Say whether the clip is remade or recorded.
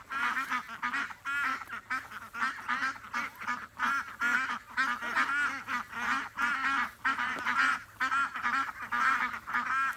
recorded